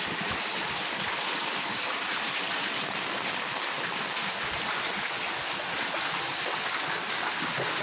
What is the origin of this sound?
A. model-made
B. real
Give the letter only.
B